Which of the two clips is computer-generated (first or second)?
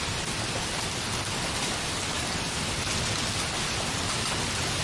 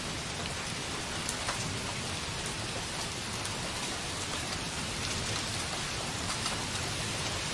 second